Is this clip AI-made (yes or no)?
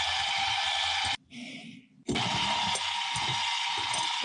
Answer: no